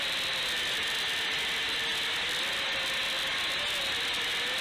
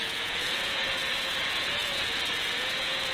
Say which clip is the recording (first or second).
first